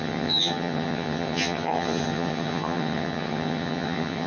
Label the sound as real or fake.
fake